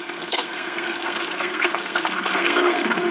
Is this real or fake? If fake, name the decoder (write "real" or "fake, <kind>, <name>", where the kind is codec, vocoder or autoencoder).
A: fake, codec, SNAC